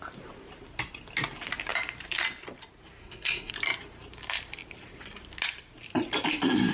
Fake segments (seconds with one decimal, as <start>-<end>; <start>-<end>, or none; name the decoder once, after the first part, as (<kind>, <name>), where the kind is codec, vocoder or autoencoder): 3.0-3.5 (codec, SNAC)